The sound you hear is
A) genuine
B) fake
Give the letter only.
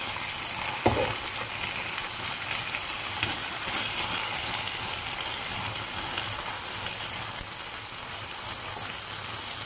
A